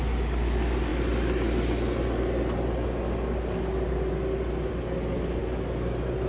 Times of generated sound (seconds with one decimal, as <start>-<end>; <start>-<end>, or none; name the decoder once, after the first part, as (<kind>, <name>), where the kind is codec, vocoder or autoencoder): none